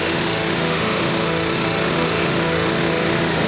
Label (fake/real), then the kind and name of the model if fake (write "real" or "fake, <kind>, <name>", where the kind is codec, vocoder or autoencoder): fake, autoencoder, DAC-VAE